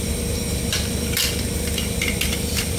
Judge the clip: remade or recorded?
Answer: recorded